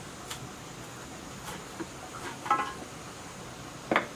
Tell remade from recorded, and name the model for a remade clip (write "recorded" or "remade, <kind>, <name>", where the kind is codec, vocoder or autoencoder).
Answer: recorded